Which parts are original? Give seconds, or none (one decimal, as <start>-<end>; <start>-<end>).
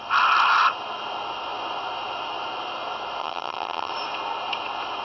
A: 0.0-3.2; 3.9-5.0